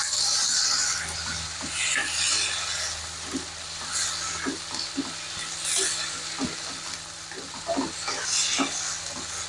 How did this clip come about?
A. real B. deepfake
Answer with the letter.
A